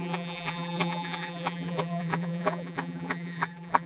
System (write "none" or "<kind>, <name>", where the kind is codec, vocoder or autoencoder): vocoder, BigVGAN v2